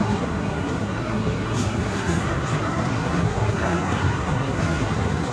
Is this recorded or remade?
remade